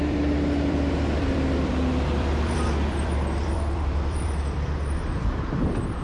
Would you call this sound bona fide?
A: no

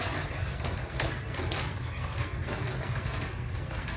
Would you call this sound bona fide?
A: no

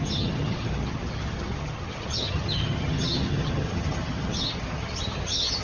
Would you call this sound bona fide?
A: no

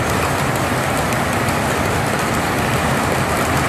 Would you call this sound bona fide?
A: yes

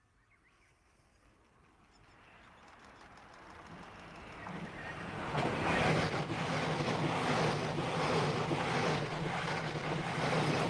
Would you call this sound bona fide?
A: yes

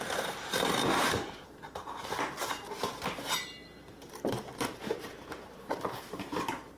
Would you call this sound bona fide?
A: no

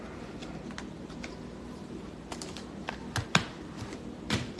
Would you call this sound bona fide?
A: yes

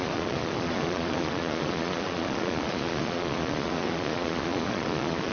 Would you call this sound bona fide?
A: no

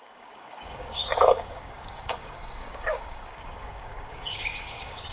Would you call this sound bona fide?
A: no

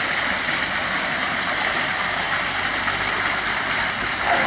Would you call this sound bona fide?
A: yes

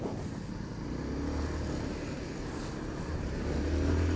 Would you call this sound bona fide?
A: yes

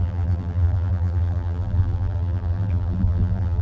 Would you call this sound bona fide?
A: no